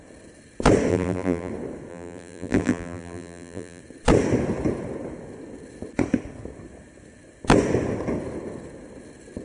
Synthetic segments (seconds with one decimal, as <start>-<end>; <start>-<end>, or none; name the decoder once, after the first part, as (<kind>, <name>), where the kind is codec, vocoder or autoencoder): 0.9-1.5 (vocoder, BigVGAN v2); 1.9-3.8